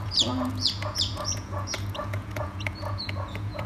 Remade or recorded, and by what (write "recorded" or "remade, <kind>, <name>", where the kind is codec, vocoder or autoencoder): remade, vocoder, Vocos